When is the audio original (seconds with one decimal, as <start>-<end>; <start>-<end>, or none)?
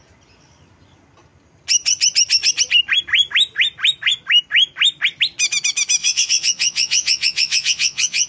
0.0-6.0